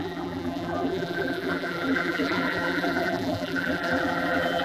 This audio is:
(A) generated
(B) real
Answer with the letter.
A